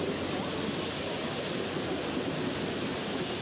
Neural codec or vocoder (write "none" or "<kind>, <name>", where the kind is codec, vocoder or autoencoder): none